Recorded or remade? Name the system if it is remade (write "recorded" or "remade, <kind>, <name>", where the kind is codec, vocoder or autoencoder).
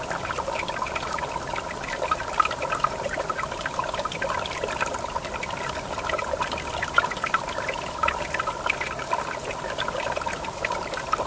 remade, vocoder, BigVGAN v2